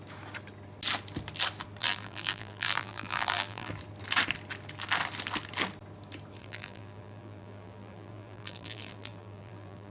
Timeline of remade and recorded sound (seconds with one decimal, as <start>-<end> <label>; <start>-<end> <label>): 0.0-1.8 recorded; 1.8-3.7 remade; 3.7-6.4 recorded; 6.4-9.9 remade